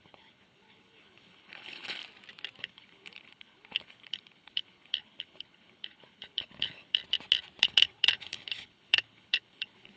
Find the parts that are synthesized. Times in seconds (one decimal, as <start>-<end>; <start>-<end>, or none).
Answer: 0.0-2.0; 2.6-7.0; 7.6-10.0